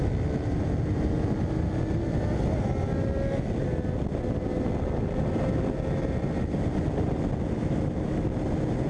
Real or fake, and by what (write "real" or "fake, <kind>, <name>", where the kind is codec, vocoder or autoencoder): real